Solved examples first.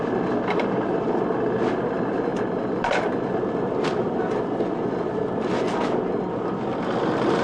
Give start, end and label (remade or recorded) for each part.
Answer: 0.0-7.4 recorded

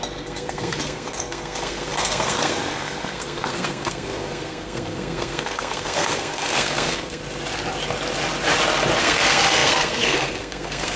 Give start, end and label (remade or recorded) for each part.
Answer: 0.0-7.2 remade; 7.2-9.0 recorded; 9.0-11.0 remade

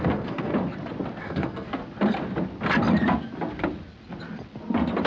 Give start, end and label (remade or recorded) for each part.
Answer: 0.0-0.5 remade; 0.5-1.2 recorded; 1.2-1.8 remade; 1.8-5.1 recorded

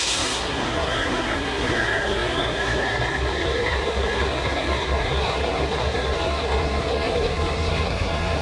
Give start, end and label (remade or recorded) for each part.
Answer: 0.0-8.4 remade

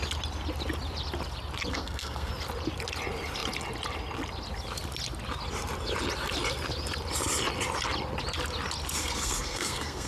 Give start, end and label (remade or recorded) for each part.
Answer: 0.0-1.7 recorded; 1.7-2.3 remade; 2.3-9.0 recorded; 9.0-10.1 remade

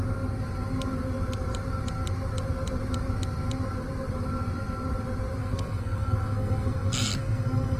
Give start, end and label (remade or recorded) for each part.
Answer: 0.0-5.4 recorded; 5.4-7.8 remade

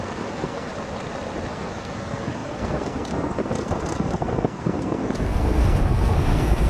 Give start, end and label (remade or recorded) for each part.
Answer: 0.0-0.7 remade; 0.7-1.5 recorded; 1.5-6.7 remade

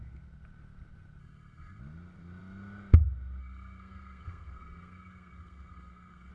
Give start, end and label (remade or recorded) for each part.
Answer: 0.0-1.2 recorded; 1.2-1.8 remade; 1.8-3.4 recorded; 3.4-6.3 remade